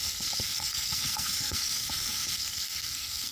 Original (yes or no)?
no